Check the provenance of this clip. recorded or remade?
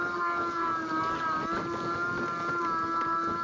recorded